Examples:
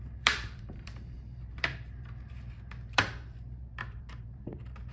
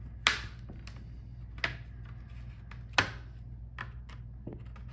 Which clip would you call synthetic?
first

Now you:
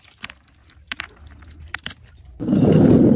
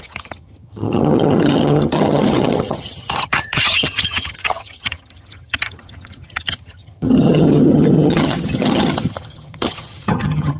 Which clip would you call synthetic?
second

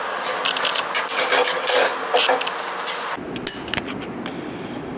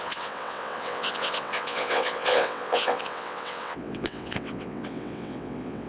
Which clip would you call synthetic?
second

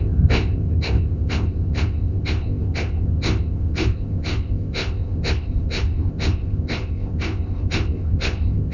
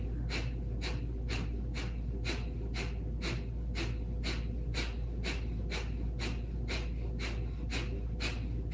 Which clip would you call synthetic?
first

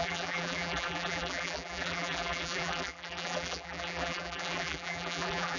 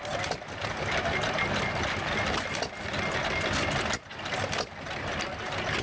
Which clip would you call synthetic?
first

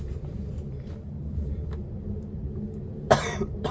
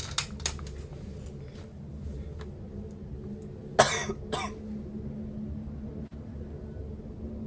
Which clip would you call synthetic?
first